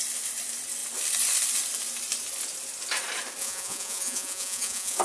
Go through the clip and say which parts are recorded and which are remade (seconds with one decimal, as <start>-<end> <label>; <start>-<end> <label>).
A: 0.0-3.4 recorded; 3.4-5.0 remade